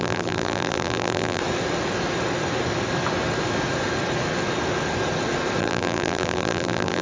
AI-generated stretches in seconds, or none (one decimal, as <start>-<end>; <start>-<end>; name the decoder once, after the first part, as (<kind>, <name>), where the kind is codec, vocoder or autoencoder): 0.0-1.4 (vocoder, BigVGAN v2); 5.6-7.0